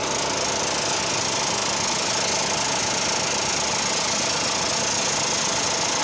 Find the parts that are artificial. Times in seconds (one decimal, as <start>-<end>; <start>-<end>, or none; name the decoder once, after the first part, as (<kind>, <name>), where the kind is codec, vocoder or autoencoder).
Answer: none